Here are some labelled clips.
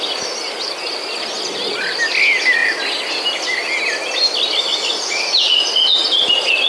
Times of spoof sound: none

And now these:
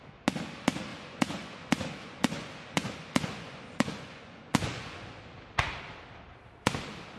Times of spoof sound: 0.9-5.2 (vocoder, Vocos)

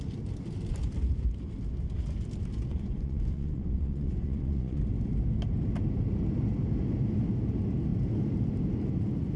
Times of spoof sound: 2.7-4.8 (vocoder, Vocos)

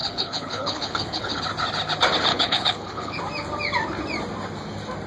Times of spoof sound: 0.0-1.4 (codec, HILCodec); 2.3-3.2

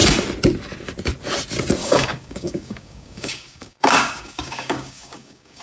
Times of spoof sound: 1.8-5.6 (codec, DAC)